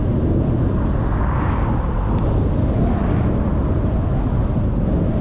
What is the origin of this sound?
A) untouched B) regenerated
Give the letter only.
A